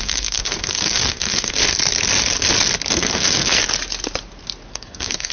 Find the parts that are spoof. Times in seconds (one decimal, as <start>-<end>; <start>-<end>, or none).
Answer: 0.0-1.6; 2.9-3.6; 4.7-5.3